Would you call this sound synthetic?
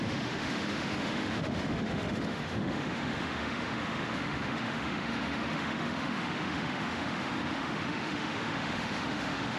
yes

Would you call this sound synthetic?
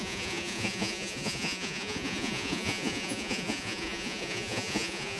yes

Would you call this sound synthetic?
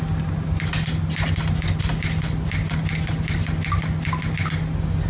no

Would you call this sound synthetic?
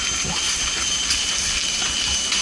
no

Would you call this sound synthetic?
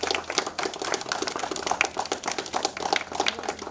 no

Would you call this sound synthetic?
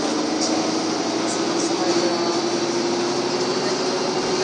no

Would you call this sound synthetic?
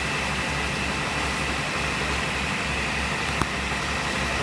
no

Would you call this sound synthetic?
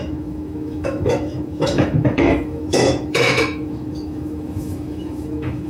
yes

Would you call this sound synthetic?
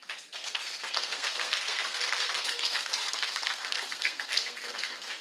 yes